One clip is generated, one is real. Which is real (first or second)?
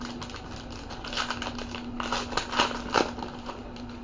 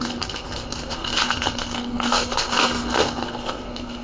first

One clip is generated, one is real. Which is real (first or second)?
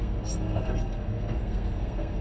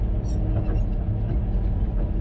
second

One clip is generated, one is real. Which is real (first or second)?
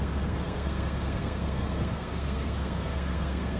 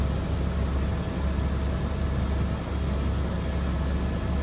second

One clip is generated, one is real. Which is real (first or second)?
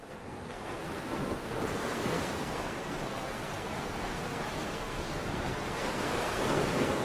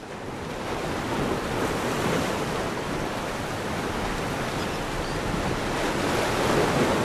second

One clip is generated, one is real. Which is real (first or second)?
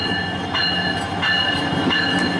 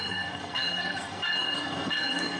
first